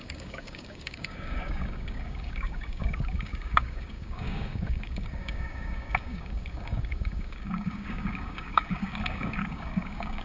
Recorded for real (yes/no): no